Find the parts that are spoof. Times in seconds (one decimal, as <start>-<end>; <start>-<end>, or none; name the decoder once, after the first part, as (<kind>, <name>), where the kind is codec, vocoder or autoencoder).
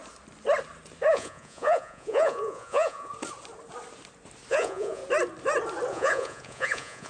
1.1-3.1 (vocoder, Vocos); 4.5-5.0; 5.9-7.1